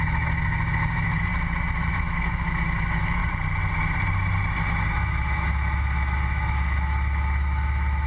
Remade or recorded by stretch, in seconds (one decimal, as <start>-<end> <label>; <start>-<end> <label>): 0.0-1.3 remade; 1.3-1.9 recorded; 1.9-3.2 remade; 3.2-4.9 recorded; 4.9-8.1 remade